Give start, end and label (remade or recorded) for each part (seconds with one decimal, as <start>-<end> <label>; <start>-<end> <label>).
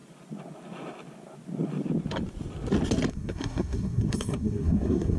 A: 0.0-3.1 recorded; 3.1-5.2 remade